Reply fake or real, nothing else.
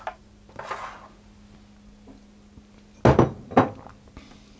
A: real